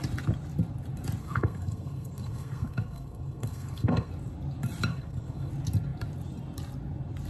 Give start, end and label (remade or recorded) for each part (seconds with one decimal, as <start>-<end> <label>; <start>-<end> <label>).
0.0-1.2 recorded; 1.2-4.1 remade; 4.1-4.9 recorded; 4.9-5.5 remade; 5.5-7.3 recorded